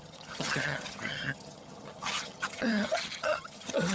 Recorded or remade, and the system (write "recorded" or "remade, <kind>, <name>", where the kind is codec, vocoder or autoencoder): remade, vocoder, HiFi-GAN